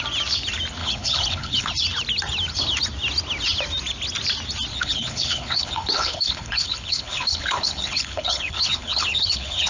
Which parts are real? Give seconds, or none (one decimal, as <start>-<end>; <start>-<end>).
0.0-0.8; 1.7-4.7